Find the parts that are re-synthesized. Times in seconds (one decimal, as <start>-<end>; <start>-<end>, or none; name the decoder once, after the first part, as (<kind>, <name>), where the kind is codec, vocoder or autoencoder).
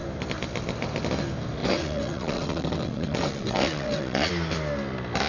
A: 1.6-4.3 (vocoder, WaveNeXt)